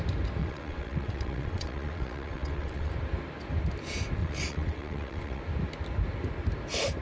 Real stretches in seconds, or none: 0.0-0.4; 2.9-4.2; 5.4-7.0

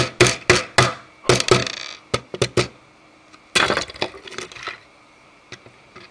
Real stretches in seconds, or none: 0.0-6.1